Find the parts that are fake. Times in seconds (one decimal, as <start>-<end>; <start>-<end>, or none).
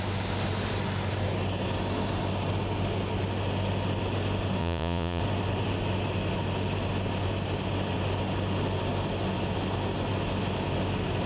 4.6-5.2